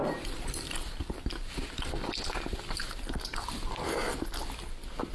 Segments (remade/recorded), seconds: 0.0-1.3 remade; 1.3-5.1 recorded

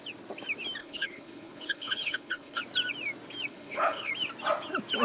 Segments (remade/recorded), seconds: 0.0-0.8 recorded; 0.8-2.6 remade; 2.6-3.5 recorded; 3.5-4.1 remade; 4.1-5.0 recorded

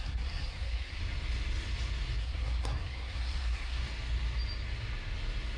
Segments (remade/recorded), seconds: 0.0-1.0 remade; 1.0-2.2 recorded; 2.2-3.8 remade; 3.8-5.6 recorded

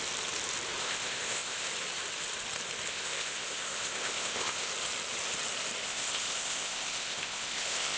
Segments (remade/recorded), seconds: 0.0-0.8 recorded; 0.8-1.7 remade; 1.7-2.9 recorded; 2.9-4.7 remade; 4.7-5.8 recorded; 5.8-8.0 remade

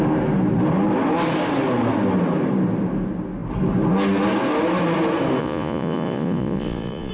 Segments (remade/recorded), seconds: 0.0-5.4 recorded; 5.4-7.1 remade

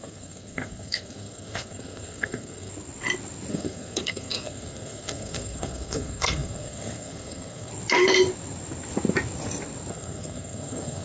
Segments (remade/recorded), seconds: 0.0-2.7 remade; 2.7-3.5 recorded; 3.5-7.7 remade; 7.7-9.9 recorded; 9.9-11.0 remade

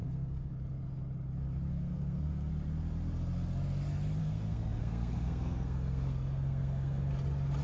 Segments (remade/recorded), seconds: 0.0-0.5 remade; 0.5-1.7 recorded; 1.7-2.5 remade; 2.5-4.2 recorded; 4.2-7.1 remade; 7.1-7.6 recorded

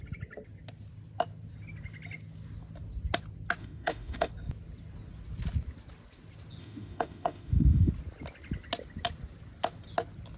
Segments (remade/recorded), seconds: 0.0-3.6 recorded; 3.6-4.3 remade; 4.3-6.6 recorded; 6.6-7.9 remade; 7.9-10.4 recorded